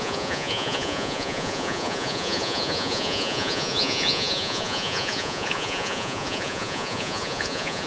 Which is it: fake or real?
fake